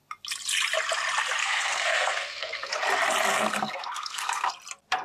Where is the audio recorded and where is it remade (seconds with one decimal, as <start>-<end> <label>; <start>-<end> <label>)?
0.0-1.4 recorded; 1.4-2.7 remade; 2.7-3.3 recorded; 3.3-4.5 remade; 4.5-5.0 recorded